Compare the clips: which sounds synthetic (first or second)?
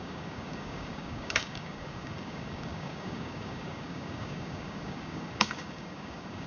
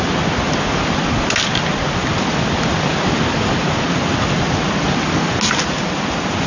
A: first